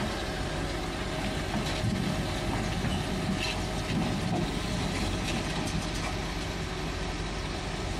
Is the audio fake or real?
real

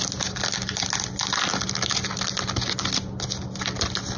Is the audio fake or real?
real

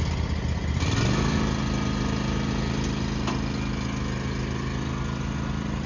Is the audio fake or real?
real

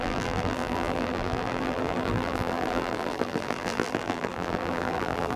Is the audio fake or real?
fake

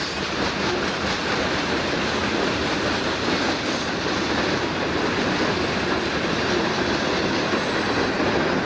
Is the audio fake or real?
real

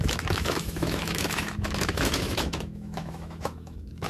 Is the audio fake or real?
fake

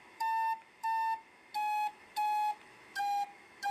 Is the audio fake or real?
fake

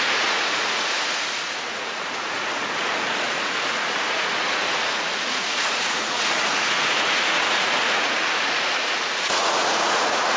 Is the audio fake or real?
fake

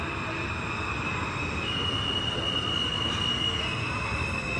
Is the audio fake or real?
real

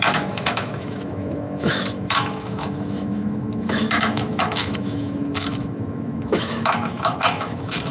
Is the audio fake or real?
fake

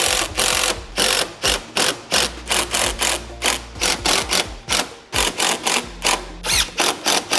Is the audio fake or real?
real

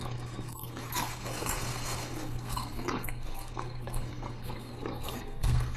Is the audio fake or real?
fake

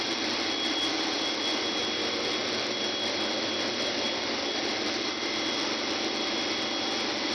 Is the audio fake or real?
fake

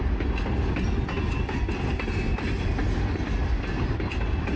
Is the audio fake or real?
real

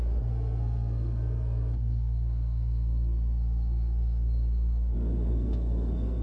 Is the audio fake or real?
fake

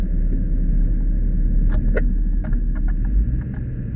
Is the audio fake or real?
real